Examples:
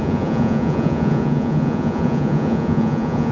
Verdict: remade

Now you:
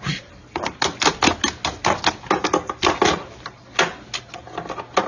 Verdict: recorded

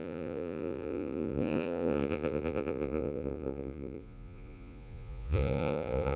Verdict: remade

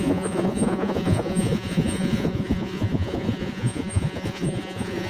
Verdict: remade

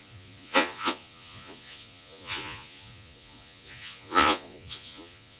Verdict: remade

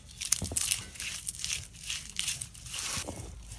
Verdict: recorded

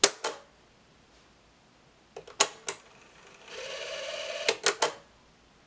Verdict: recorded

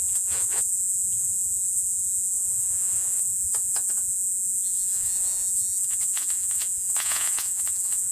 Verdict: remade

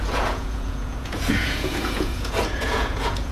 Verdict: remade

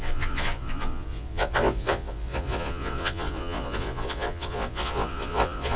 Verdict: remade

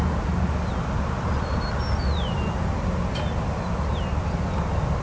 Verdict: recorded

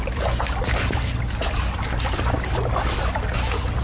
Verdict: recorded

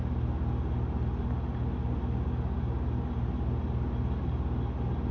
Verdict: recorded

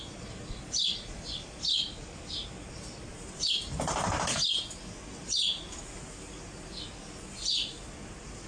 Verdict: recorded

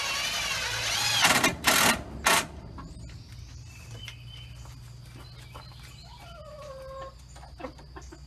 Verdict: recorded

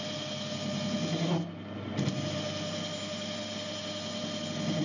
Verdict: recorded